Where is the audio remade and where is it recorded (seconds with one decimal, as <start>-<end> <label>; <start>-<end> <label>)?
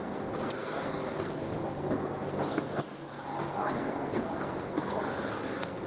0.0-5.9 remade